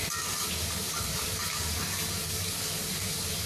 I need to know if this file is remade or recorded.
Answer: remade